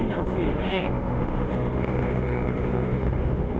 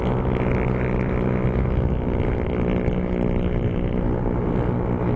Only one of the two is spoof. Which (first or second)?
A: first